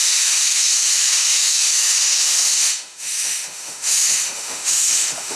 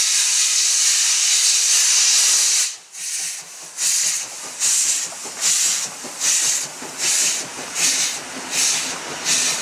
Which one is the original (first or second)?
second